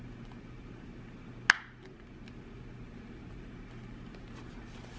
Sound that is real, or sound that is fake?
real